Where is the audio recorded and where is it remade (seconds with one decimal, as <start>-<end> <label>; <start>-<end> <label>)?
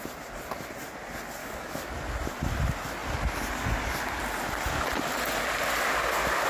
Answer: 0.0-1.4 recorded; 1.4-1.9 remade; 1.9-6.5 recorded